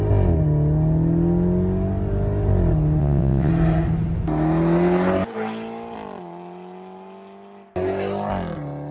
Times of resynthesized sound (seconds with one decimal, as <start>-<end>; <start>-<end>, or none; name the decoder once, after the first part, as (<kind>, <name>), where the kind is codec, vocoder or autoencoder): 3.0-3.5 (vocoder, WaveNeXt)